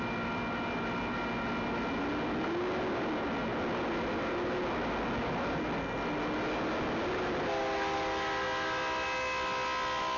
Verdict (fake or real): real